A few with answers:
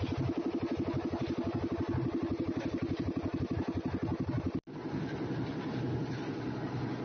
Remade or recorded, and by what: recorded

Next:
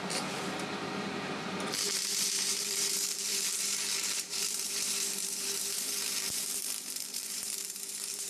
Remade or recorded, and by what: remade, vocoder, BigVGAN v2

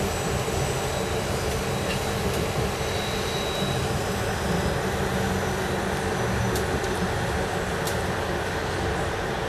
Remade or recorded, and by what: recorded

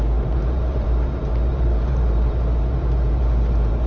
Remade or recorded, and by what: remade, vocoder, BigVGAN v2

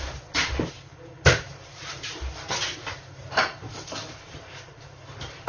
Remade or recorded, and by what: remade, vocoder, BigVGAN v2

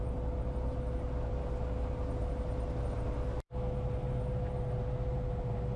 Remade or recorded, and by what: recorded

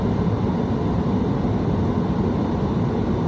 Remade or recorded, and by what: recorded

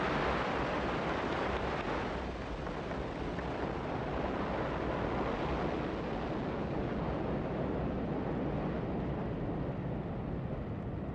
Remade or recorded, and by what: recorded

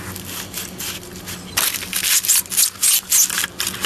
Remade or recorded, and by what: recorded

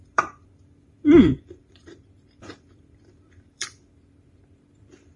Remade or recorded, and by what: remade, vocoder, BigVGAN v2